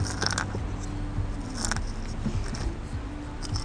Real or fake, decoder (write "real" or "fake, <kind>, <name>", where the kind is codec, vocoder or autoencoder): real